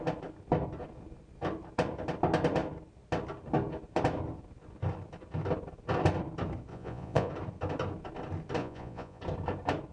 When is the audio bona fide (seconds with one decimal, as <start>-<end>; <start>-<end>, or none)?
0.0-6.7; 7.3-8.6; 9.2-9.9